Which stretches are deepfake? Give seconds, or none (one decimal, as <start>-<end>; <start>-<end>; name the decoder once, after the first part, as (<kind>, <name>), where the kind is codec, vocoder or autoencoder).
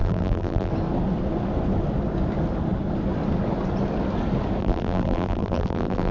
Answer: 0.0-0.7 (vocoder, BigVGAN v2); 4.6-6.1